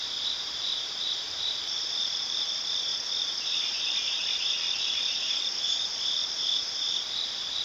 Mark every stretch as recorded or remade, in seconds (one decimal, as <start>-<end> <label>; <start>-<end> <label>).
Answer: 0.0-7.6 remade